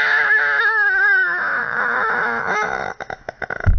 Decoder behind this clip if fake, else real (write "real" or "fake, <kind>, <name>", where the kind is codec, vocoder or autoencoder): fake, autoencoder, DAC-VAE